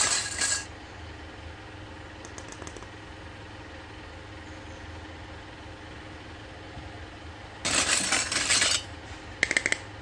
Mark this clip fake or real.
real